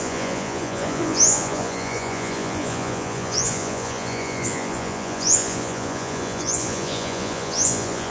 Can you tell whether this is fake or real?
fake